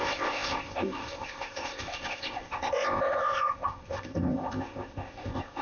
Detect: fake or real fake